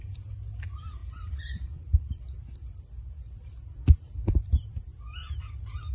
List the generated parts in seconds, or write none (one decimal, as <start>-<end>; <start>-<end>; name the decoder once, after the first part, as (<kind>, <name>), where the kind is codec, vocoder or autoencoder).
0.0-5.9 (vocoder, BigVGAN v2)